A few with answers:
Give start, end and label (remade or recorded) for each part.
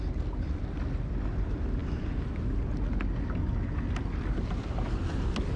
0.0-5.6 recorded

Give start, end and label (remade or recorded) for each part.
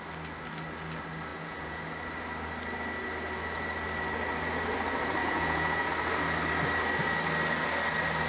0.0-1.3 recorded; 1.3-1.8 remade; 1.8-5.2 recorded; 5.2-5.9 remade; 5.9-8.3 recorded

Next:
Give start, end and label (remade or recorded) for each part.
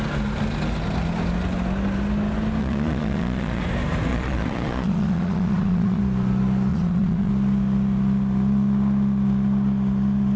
0.0-2.6 recorded; 2.6-3.6 remade; 3.6-4.1 recorded; 4.1-6.0 remade; 6.0-6.7 recorded; 6.7-7.3 remade; 7.3-10.4 recorded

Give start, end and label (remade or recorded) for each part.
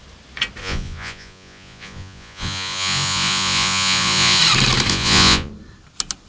0.0-0.6 recorded; 0.6-4.4 remade; 4.4-4.9 recorded; 4.9-5.5 remade; 5.5-6.3 recorded